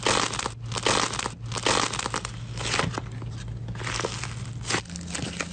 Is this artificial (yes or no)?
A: no